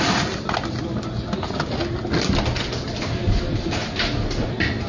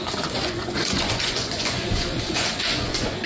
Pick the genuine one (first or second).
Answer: first